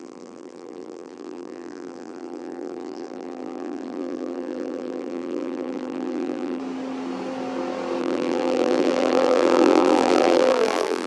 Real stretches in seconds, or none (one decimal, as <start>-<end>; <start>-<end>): 6.6-8.0